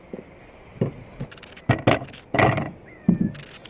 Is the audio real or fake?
real